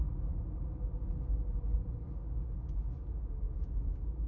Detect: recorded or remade recorded